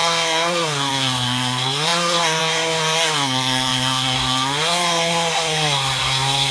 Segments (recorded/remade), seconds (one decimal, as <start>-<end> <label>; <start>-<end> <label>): 0.0-6.5 remade